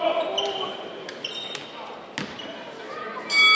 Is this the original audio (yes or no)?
yes